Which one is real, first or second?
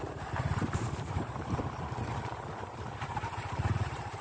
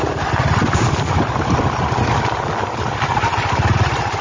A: second